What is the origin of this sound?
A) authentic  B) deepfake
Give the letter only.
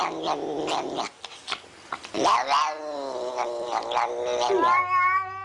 A